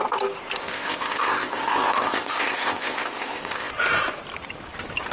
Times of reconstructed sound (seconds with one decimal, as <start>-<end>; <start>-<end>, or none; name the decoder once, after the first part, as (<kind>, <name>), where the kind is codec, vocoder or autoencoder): 0.6-3.7 (codec, ZipCodec)

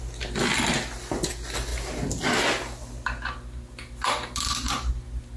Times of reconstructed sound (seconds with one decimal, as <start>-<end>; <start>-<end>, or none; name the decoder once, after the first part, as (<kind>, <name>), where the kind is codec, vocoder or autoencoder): none

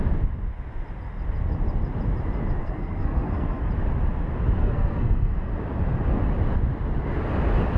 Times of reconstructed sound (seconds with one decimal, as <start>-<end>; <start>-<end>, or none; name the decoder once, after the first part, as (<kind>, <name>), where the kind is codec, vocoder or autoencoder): 2.6-3.7 (codec, SNAC); 4.6-5.5

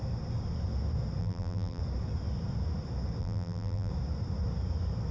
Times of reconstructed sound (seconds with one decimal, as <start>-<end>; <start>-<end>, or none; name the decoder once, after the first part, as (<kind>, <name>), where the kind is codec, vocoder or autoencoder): 1.2-1.8 (vocoder, BigVGAN v2); 3.2-3.9

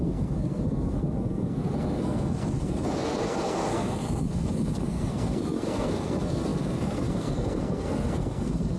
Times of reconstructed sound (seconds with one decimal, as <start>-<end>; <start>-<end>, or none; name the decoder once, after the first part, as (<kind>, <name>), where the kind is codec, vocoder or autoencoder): 0.0-8.8 (codec, SNAC)

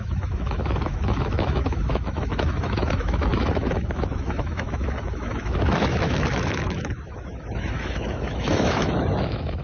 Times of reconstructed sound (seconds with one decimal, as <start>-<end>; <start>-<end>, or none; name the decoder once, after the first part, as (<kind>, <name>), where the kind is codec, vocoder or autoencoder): 0.0-9.6 (autoencoder, DAC-VAE)

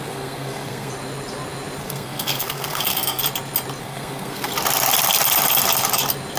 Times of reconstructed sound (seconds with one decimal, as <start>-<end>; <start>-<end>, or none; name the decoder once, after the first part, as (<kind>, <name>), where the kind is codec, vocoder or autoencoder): 0.0-0.9 (codec, SNAC); 1.8-3.2; 3.8-4.5